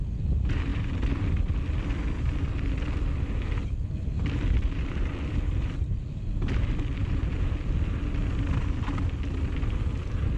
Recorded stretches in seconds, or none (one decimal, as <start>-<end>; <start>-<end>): 0.0-10.4

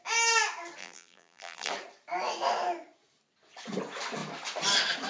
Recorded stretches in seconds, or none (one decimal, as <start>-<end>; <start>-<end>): 0.0-0.8; 1.7-5.1

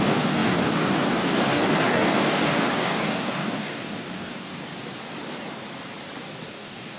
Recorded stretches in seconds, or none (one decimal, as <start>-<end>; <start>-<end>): 4.5-6.5

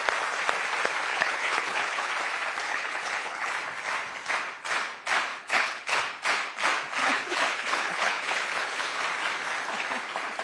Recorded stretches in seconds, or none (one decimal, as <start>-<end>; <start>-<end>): 0.0-1.1; 2.1-2.7; 3.5-5.3; 6.0-7.0; 9.0-10.4

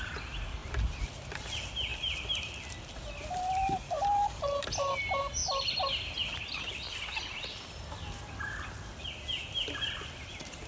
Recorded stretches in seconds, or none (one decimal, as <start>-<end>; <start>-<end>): 0.0-10.7

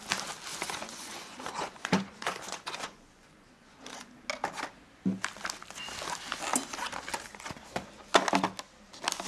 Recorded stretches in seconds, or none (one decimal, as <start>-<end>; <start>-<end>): 0.0-0.5; 4.1-9.3

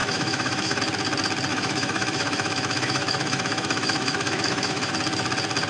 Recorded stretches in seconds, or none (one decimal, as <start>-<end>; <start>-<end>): 0.8-1.5; 4.9-5.7

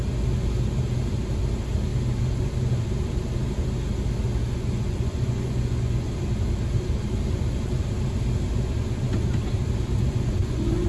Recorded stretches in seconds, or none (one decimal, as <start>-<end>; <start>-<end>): 0.0-4.4; 6.1-10.0